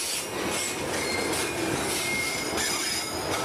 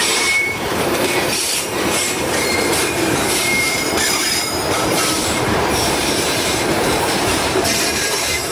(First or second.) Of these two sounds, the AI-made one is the second